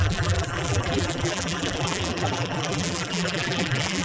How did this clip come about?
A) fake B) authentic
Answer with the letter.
A